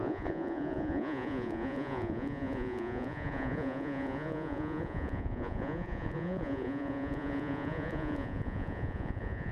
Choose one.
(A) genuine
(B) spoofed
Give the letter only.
B